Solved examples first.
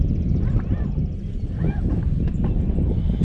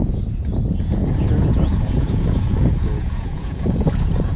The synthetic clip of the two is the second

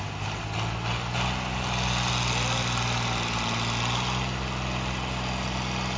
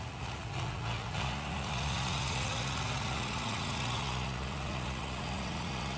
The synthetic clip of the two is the second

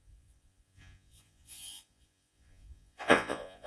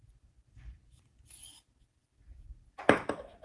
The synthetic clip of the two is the first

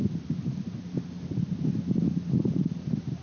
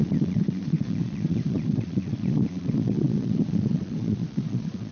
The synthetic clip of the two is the second